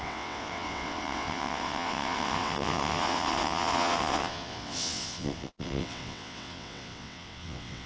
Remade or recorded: remade